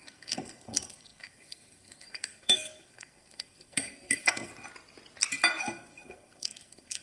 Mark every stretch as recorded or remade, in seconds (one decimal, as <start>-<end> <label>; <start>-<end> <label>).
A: 0.0-4.5 remade; 4.5-5.6 recorded; 5.6-7.0 remade